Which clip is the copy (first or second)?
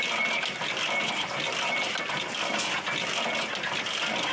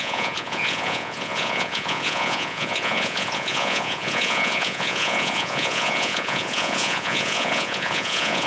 second